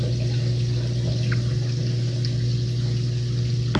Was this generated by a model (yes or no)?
no